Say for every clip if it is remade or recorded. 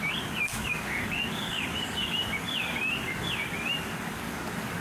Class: remade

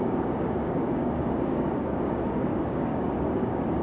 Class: remade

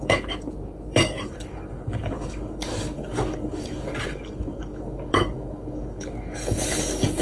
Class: remade